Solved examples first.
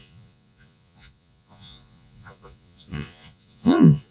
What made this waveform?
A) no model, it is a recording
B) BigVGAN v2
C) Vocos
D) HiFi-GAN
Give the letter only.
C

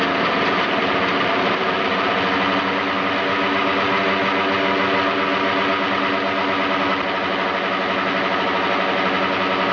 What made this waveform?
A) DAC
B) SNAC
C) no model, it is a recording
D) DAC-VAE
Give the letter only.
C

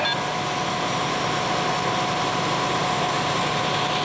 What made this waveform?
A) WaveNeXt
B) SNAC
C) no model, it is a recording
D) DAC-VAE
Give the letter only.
C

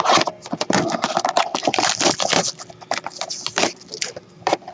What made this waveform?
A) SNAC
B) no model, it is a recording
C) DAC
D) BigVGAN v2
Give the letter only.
B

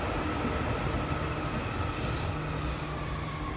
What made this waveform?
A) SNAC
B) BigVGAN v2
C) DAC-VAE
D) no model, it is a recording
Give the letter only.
D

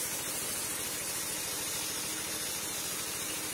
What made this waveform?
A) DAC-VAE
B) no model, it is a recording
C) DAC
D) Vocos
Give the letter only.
B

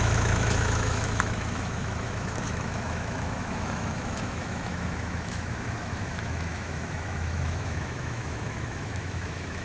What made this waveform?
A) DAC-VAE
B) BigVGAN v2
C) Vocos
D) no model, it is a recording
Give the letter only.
A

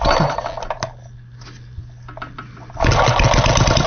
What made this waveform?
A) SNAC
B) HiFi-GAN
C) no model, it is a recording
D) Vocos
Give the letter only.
C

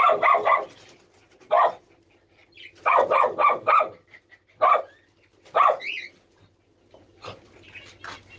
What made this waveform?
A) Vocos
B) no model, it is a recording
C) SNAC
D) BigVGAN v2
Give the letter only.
B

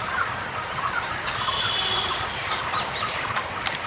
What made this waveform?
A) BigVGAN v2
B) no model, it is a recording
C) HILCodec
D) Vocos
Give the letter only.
B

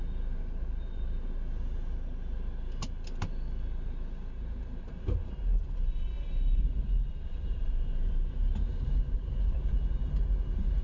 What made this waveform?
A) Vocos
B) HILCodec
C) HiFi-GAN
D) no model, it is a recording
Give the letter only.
D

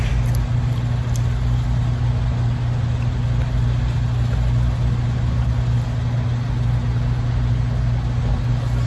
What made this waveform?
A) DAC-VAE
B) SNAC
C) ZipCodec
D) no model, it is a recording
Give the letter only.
D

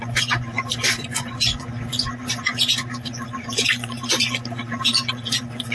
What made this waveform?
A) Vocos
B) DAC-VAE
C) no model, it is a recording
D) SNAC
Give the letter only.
A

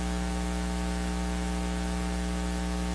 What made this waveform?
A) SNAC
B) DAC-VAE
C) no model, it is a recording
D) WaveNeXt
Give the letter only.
C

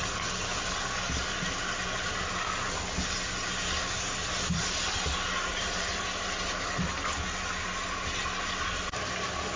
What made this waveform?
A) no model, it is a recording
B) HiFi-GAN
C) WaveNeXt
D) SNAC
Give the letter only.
A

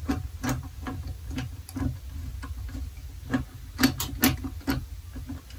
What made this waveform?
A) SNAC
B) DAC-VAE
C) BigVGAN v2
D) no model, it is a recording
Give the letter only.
D